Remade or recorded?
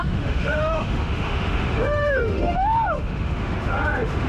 remade